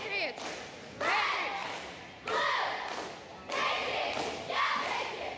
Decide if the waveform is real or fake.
real